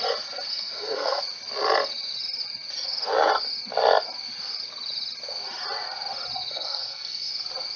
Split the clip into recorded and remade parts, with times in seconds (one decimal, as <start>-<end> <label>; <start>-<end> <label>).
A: 0.0-0.5 recorded; 0.5-1.2 remade; 1.2-6.5 recorded; 6.5-7.3 remade; 7.3-7.8 recorded